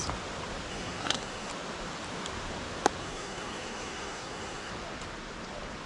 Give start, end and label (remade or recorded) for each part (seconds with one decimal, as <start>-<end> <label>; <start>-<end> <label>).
0.0-0.7 recorded; 0.7-1.5 remade; 1.5-3.0 recorded; 3.0-4.7 remade; 4.7-5.9 recorded